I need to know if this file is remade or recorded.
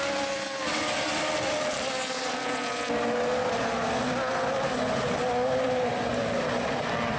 recorded